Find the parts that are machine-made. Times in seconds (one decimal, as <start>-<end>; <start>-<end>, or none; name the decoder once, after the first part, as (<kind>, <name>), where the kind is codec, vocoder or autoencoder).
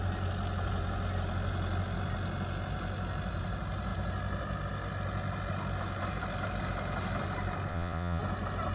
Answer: 7.7-8.2 (vocoder, Vocos)